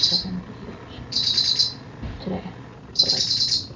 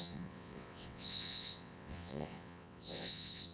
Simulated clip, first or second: second